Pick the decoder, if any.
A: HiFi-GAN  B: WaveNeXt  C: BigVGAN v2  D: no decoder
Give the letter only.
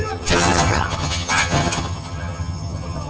A